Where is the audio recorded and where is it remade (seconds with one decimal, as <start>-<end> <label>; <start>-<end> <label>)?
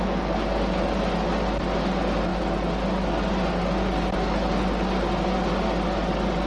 0.0-6.5 recorded